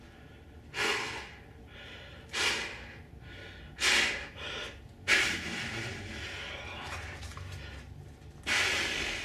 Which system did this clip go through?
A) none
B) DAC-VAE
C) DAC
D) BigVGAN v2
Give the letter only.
A